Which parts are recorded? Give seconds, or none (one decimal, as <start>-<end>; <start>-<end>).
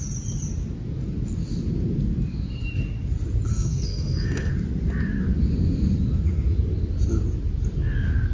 0.0-3.5; 4.5-8.3